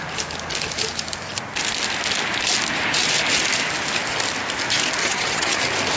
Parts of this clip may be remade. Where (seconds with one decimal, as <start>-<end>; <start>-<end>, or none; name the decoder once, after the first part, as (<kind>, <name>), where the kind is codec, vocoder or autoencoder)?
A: 5.0-5.6 (vocoder, HiFi-GAN)